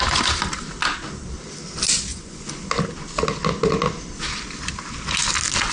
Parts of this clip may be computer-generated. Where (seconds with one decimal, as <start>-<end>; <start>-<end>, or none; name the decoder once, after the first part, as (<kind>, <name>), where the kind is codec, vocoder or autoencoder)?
2.1-2.6 (vocoder, Vocos)